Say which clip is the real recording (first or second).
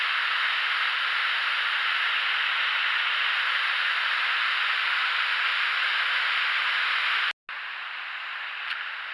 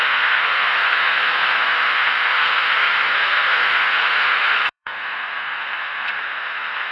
first